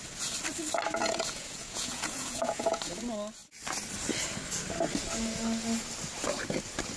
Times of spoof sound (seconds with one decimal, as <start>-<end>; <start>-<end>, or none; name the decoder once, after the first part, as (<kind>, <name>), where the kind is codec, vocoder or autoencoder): 1.0-2.9 (vocoder, Vocos)